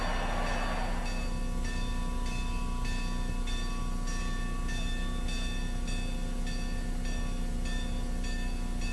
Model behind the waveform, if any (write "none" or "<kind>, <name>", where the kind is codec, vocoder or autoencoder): none